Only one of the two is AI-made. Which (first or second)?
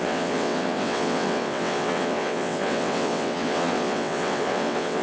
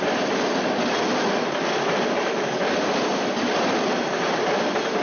first